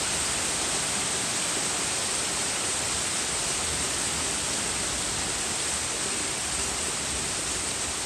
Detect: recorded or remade recorded